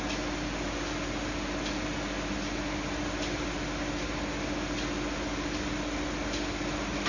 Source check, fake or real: real